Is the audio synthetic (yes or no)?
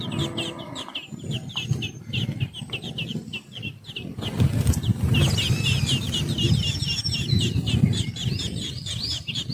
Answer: no